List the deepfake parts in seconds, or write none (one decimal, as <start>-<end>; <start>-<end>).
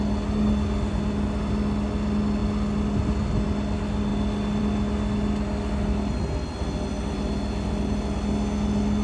none